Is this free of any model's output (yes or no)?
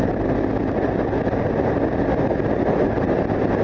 yes